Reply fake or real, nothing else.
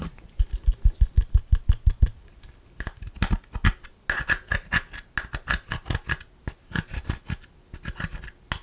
real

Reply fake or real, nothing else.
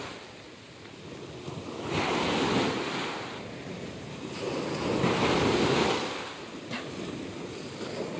real